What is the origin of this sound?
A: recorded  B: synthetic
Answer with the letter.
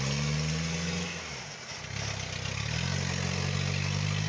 A